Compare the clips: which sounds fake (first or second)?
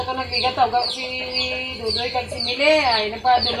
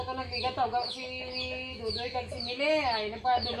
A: second